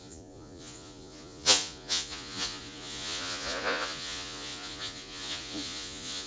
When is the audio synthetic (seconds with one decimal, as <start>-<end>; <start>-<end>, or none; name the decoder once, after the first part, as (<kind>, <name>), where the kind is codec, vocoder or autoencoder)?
0.0-6.3 (vocoder, Vocos)